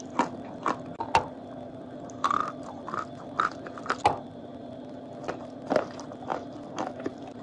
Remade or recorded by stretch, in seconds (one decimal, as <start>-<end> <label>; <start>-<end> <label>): 0.0-2.4 recorded; 2.4-5.5 remade; 5.5-7.4 recorded